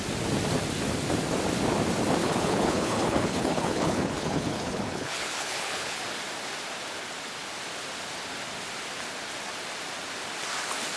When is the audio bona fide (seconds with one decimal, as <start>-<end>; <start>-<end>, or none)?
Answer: 0.0-2.2; 6.0-11.0